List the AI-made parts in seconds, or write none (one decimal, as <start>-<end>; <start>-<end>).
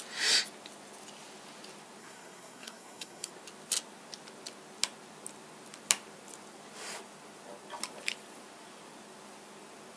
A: 2.0-3.3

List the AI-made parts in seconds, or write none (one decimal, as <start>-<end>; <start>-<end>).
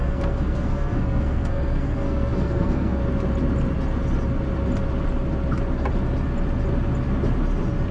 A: 0.0-3.0